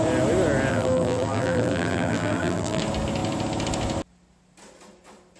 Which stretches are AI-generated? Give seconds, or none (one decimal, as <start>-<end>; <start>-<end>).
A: 0.7-2.8